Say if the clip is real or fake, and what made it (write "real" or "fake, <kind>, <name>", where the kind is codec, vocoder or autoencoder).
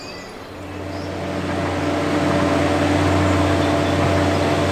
real